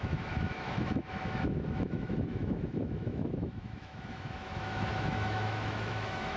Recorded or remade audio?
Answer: remade